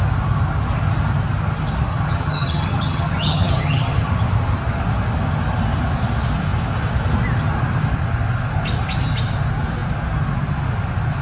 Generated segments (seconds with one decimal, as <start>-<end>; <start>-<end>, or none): 1.9-4.1